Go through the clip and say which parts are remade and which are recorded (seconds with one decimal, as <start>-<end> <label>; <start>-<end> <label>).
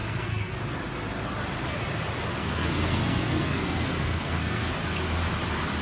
0.0-0.6 remade; 0.6-2.3 recorded; 2.3-4.7 remade; 4.7-5.8 recorded